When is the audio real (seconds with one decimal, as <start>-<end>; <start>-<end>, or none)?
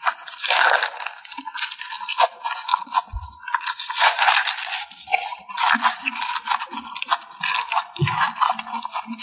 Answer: 0.0-2.7; 4.3-9.2